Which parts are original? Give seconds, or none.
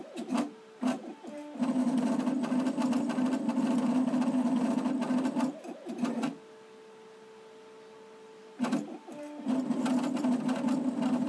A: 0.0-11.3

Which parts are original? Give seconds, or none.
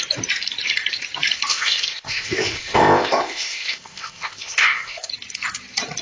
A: 0.0-1.5; 5.1-6.0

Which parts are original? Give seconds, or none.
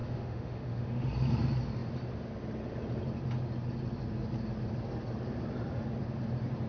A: 1.1-6.7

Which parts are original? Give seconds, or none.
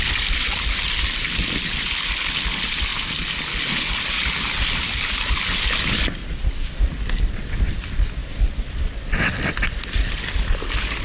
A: 0.0-6.2; 6.7-11.0